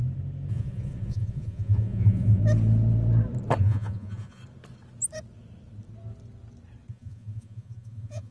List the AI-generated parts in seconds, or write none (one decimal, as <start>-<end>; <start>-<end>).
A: 0.5-2.4; 3.6-4.4; 6.9-8.3